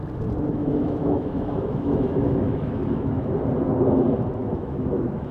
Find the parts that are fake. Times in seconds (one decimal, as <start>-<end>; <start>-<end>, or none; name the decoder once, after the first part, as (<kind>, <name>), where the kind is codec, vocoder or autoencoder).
0.6-3.3 (autoencoder, DAC-VAE); 4.4-5.3